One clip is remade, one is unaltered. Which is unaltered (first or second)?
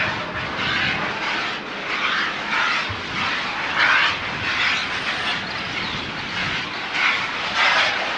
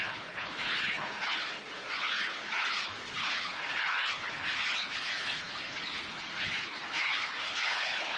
first